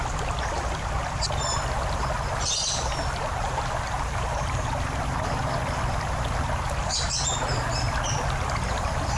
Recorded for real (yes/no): yes